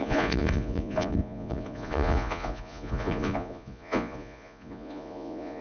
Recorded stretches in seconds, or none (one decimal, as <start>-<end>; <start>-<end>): none